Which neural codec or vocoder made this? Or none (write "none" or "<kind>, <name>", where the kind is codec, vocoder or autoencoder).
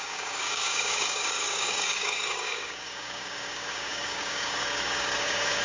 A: codec, DAC